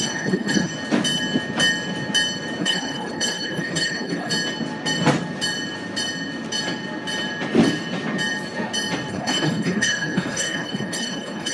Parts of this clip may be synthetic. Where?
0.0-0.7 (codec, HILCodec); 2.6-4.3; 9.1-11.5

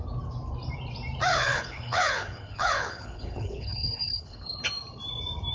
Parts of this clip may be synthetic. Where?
1.3-4.6 (codec, HILCodec)

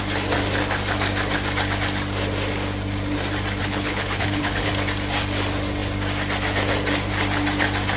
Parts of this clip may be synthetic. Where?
3.6-4.7 (codec, HILCodec)

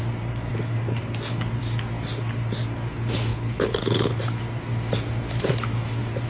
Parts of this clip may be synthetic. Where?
3.3-4.1 (codec, HILCodec)

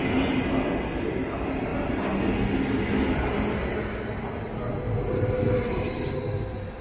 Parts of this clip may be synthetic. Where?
none